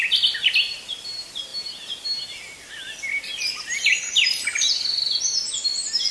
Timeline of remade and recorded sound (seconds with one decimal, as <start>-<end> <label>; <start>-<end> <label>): 0.0-6.1 recorded